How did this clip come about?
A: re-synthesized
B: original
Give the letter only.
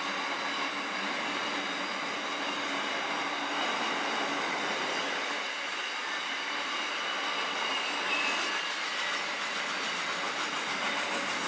B